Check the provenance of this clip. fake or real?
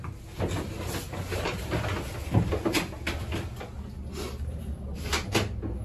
real